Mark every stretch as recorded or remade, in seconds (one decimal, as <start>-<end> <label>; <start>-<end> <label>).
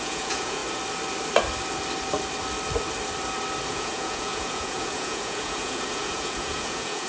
0.0-0.6 remade; 0.6-3.7 recorded; 3.7-7.1 remade